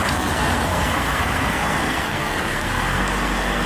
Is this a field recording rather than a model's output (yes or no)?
no